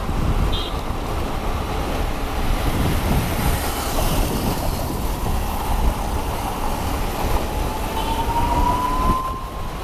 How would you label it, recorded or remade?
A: recorded